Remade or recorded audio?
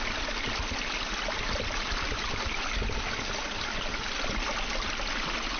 recorded